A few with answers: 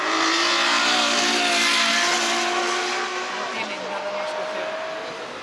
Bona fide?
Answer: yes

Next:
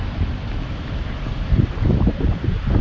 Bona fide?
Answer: no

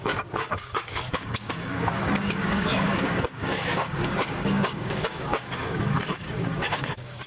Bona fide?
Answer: no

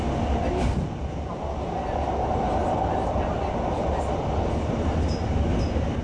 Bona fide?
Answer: yes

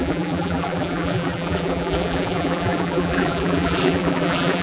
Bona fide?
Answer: no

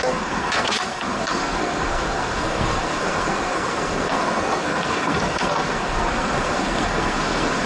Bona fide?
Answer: no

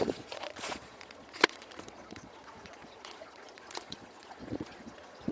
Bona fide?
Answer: no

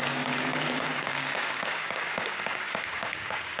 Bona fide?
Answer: no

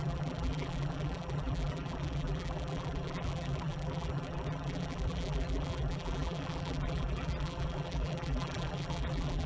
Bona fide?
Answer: no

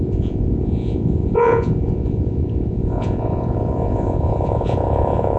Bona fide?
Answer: no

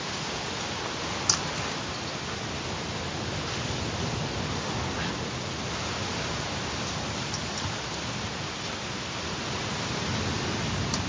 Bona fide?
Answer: yes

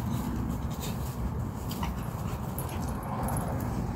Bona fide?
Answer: yes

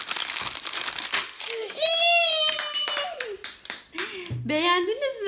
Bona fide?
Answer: yes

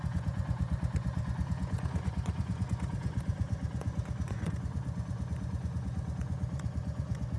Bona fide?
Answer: no